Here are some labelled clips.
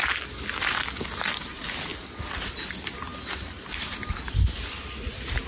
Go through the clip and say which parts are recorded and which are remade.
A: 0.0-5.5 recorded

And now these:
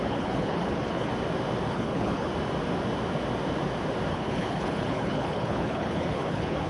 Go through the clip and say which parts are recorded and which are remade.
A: 0.0-1.1 remade; 1.1-1.7 recorded; 1.7-2.3 remade; 2.3-4.1 recorded; 4.1-6.7 remade